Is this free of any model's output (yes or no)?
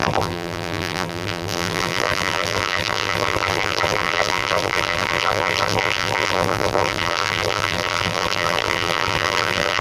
no